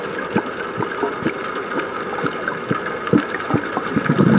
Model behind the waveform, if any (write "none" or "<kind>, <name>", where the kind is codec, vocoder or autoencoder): none